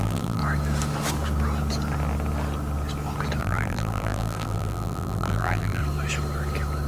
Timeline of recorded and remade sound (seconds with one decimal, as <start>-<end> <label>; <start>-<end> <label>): 0.0-0.4 remade; 0.4-3.4 recorded; 3.4-5.8 remade; 5.8-6.9 recorded